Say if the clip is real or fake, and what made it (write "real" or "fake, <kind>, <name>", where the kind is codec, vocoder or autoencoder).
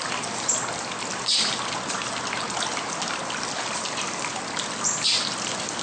real